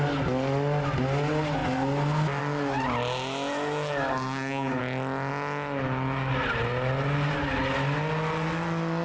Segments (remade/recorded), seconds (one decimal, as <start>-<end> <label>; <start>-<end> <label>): 0.0-4.1 recorded; 4.1-4.8 remade; 4.8-9.0 recorded